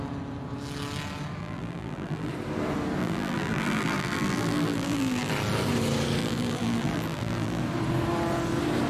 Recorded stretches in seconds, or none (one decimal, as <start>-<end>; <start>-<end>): 0.0-1.4; 2.3-3.0; 5.3-6.2; 7.6-8.9